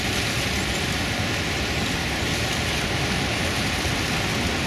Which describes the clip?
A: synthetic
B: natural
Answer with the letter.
B